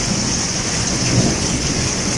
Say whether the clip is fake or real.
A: fake